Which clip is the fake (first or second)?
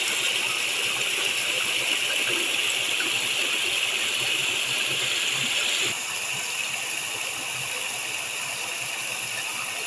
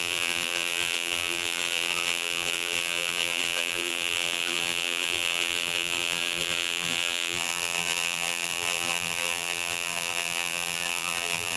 second